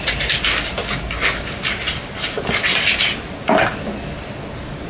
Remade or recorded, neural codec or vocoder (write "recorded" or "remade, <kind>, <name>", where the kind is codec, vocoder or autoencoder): recorded